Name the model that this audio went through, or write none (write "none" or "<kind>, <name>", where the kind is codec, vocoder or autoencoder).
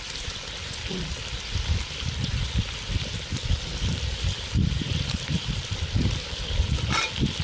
none